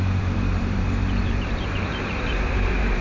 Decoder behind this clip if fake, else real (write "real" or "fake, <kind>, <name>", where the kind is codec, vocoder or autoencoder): fake, vocoder, BigVGAN v2